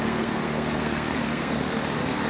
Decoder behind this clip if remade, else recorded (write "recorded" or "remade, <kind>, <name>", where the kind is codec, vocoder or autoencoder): remade, codec, SNAC